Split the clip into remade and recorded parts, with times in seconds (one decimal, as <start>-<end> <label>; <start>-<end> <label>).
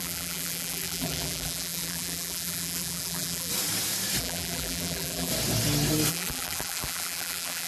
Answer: 0.0-3.5 remade; 3.5-4.2 recorded; 4.2-5.3 remade; 5.3-6.1 recorded; 6.1-7.7 remade